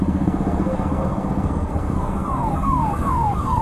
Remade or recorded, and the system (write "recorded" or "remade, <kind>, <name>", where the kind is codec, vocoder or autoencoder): remade, codec, SNAC